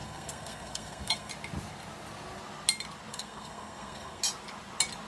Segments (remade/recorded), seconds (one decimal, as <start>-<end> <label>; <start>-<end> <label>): 0.0-1.3 remade; 1.3-3.1 recorded; 3.1-4.2 remade; 4.2-5.1 recorded